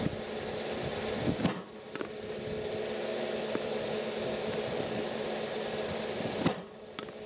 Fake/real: real